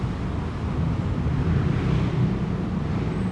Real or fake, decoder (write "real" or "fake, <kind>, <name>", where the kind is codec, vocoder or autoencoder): real